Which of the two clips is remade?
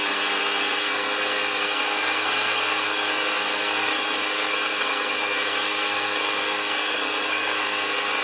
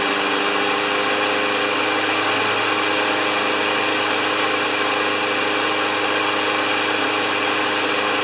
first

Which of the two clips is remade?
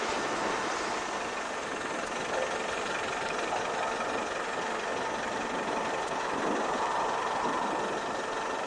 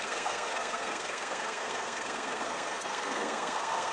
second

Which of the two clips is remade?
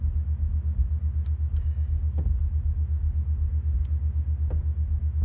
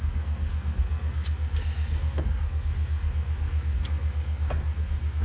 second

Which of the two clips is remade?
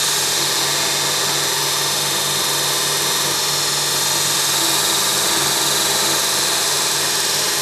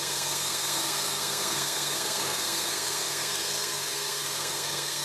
second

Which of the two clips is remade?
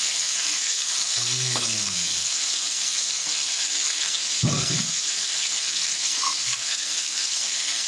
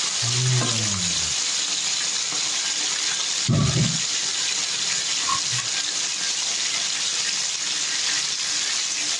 first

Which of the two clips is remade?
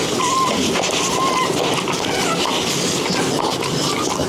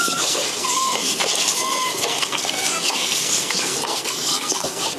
second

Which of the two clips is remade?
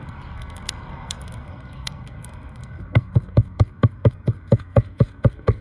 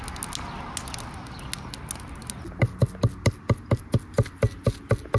first